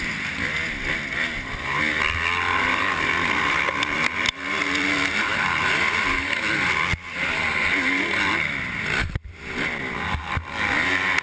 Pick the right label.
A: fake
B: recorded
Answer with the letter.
B